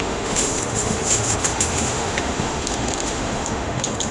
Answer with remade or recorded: remade